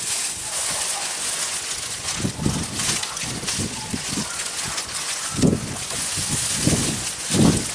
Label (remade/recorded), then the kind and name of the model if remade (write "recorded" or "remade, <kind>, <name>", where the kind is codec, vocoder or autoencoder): remade, vocoder, Vocos